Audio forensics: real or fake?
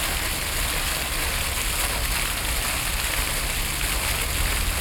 real